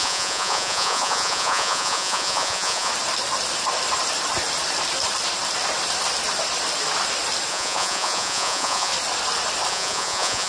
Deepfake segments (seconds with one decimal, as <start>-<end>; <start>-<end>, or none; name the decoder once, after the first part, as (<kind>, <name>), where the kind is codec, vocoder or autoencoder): 0.0-2.9 (vocoder, Vocos); 7.5-8.9; 9.7-10.5